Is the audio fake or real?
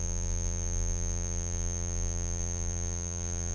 fake